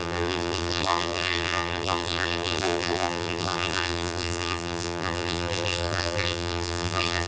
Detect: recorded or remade remade